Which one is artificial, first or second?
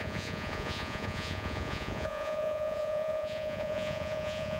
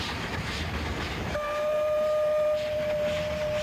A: first